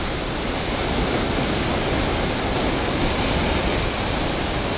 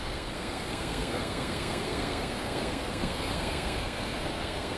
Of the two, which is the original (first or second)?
first